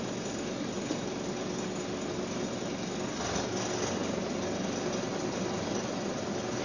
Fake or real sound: real